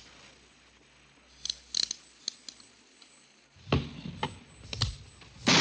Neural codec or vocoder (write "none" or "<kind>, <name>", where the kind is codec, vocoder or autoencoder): none